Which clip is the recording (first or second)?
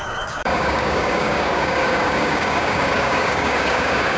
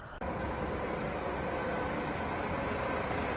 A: second